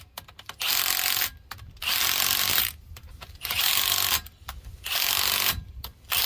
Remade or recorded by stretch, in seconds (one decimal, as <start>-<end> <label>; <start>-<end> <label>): 0.0-2.5 recorded; 2.5-3.7 remade; 3.7-6.3 recorded